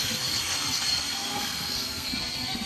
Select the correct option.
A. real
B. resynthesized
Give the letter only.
B